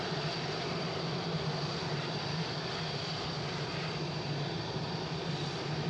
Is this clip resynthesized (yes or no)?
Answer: no